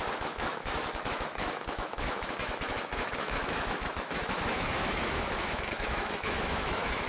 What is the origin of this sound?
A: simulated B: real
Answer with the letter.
A